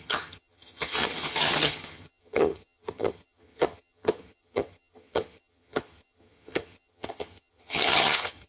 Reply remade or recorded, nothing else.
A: remade